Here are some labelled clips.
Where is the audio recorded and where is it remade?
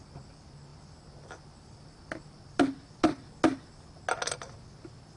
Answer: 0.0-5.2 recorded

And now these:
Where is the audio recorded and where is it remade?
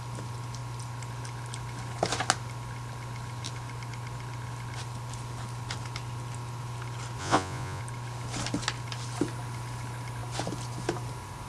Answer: 0.0-7.2 recorded; 7.2-7.8 remade; 7.8-11.5 recorded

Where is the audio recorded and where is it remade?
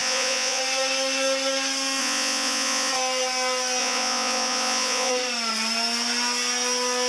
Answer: 0.0-0.6 remade; 0.6-2.0 recorded; 2.0-2.9 remade; 2.9-3.8 recorded; 3.8-5.1 remade; 5.1-7.1 recorded